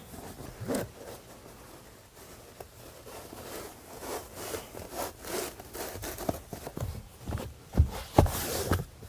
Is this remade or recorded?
recorded